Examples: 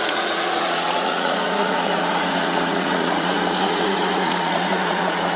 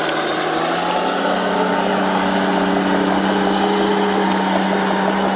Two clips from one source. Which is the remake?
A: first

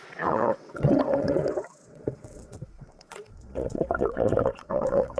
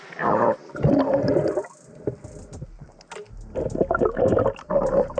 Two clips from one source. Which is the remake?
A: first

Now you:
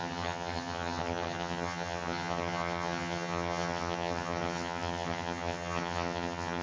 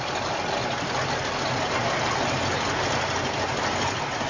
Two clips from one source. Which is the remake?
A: first